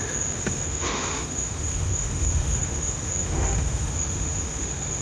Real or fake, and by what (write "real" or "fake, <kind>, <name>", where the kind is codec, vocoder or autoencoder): fake, autoencoder, DAC-VAE